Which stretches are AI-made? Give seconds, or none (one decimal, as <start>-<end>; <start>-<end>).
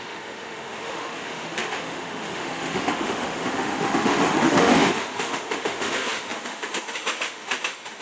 0.0-8.0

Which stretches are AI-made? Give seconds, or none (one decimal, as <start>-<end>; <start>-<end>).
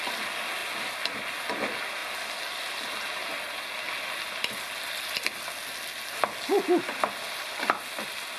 none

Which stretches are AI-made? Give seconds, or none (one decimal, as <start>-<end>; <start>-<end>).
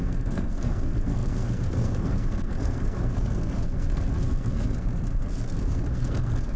0.0-6.6